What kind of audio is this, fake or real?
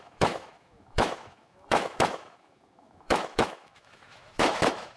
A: fake